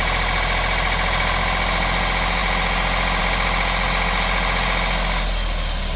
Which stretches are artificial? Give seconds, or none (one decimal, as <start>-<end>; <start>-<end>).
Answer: none